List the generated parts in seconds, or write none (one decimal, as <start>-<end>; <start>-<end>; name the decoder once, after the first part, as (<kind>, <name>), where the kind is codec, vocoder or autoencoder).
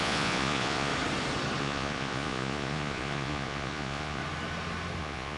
0.0-0.9 (vocoder, Vocos); 1.6-4.2; 5.0-5.4